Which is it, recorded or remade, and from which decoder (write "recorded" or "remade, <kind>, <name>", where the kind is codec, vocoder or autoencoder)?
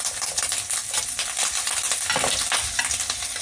recorded